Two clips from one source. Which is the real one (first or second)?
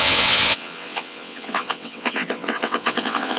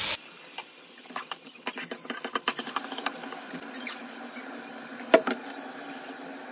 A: second